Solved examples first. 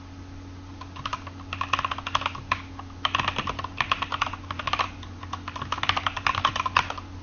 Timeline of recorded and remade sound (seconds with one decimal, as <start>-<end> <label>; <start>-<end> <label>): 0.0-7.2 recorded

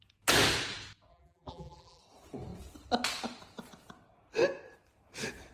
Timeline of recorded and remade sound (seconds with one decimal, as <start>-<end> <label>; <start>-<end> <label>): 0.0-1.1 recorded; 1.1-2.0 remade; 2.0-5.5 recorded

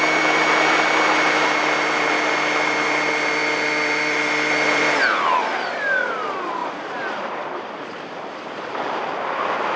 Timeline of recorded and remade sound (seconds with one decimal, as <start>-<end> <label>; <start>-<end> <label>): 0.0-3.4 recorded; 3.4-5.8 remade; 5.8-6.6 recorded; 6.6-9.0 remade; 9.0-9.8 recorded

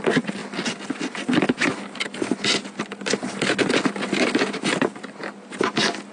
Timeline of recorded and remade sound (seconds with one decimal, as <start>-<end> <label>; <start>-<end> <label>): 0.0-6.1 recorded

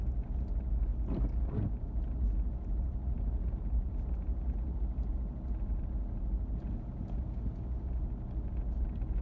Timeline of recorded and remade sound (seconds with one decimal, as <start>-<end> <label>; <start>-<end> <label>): 0.0-9.2 recorded

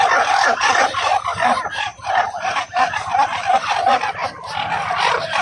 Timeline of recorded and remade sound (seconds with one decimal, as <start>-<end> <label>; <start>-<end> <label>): 0.0-1.9 recorded; 1.9-3.1 remade; 3.1-5.4 recorded

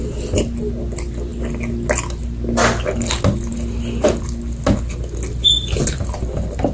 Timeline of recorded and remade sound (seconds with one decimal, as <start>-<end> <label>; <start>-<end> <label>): 0.0-6.7 recorded